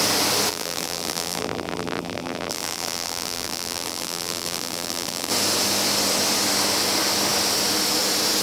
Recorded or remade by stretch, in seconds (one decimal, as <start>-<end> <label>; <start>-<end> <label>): 0.0-0.5 recorded; 0.5-5.3 remade; 5.3-8.4 recorded